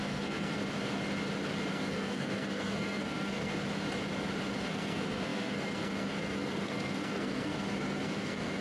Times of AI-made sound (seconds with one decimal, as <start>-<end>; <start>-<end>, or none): 0.0-0.6; 1.7-3.5; 4.6-8.6

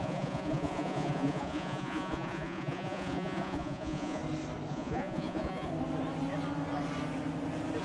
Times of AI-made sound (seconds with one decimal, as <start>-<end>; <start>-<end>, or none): 0.0-4.2; 4.7-5.7

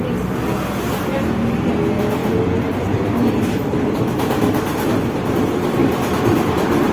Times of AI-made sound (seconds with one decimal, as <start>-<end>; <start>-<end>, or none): 0.5-1.1; 2.2-3.3; 5.8-6.9

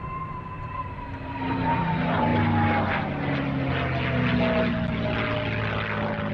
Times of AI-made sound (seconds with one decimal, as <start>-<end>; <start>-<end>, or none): 0.0-2.3

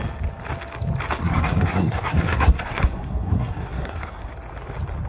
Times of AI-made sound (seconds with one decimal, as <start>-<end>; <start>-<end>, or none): 1.2-4.3